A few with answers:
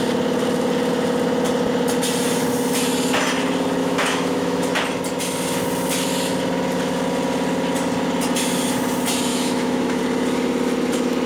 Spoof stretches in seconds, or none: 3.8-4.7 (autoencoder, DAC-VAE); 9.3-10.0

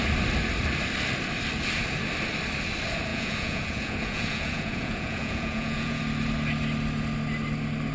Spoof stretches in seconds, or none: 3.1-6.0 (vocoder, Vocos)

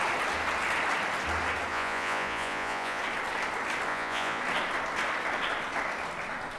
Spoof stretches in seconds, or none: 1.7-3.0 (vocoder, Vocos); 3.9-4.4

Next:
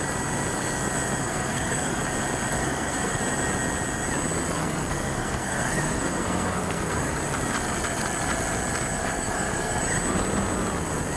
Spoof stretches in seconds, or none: 1.2-2.0 (codec, SNAC); 2.6-3.2; 4.6-7.2; 9.0-9.8